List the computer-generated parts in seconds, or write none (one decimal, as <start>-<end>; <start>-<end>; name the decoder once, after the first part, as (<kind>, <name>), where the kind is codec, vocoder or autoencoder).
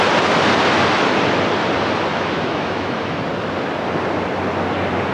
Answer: 2.1-3.2 (autoencoder, DAC-VAE)